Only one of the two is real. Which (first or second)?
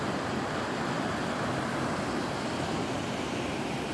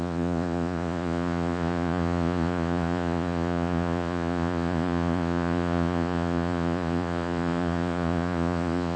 first